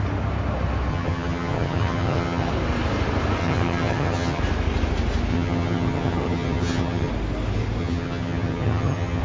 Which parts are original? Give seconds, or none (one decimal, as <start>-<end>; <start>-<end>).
0.0-0.9; 2.5-3.4; 4.4-5.3; 7.1-7.8